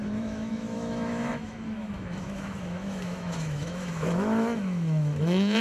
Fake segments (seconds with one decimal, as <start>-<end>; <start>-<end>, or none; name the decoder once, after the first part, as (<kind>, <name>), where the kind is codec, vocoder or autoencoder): 0.0-5.6 (autoencoder, DAC-VAE)